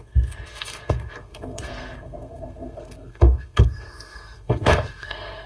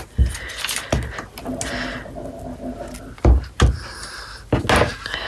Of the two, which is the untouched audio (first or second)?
second